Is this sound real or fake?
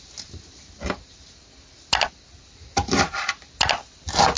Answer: real